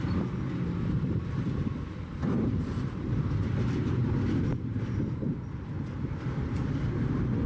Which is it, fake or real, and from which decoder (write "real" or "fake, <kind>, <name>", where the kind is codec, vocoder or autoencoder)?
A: fake, vocoder, BigVGAN v2